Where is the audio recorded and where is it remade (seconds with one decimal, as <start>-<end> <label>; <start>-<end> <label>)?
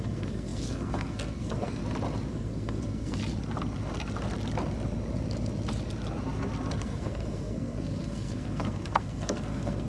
0.0-1.8 remade; 1.8-2.3 recorded; 2.3-3.2 remade; 3.2-6.7 recorded; 6.7-9.9 remade